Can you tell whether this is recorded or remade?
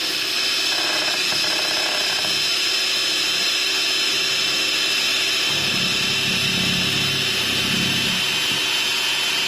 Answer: recorded